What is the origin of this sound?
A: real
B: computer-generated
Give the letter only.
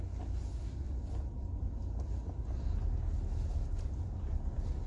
A